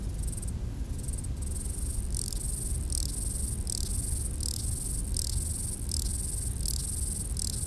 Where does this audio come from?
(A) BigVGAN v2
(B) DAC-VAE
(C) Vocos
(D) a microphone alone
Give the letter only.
D